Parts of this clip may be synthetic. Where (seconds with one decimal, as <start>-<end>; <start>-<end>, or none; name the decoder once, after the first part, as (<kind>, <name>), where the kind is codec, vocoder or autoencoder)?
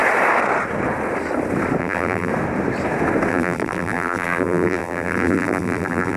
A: 1.8-2.3 (vocoder, BigVGAN v2); 3.3-6.2